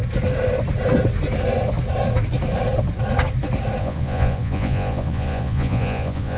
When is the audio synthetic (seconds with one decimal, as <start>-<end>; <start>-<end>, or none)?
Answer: 3.8-6.4